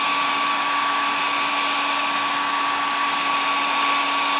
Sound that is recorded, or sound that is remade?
recorded